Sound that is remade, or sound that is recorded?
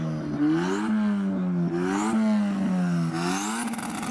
recorded